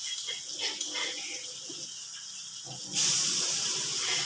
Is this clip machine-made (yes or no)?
no